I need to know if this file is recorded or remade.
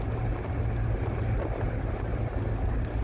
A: recorded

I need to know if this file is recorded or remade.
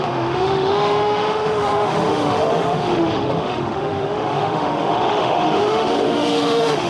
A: remade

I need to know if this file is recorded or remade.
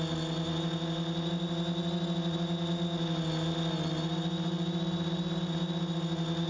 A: recorded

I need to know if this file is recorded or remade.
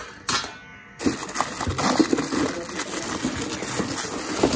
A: recorded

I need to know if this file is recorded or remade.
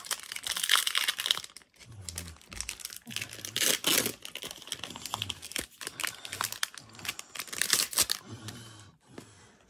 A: recorded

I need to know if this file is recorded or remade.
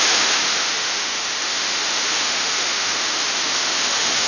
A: remade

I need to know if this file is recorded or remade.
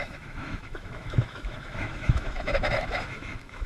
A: remade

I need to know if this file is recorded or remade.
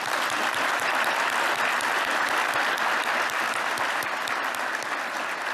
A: recorded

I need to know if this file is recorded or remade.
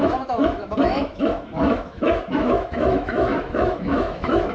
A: remade